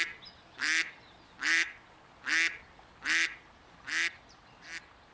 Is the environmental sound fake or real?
real